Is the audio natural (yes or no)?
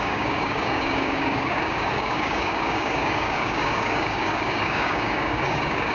no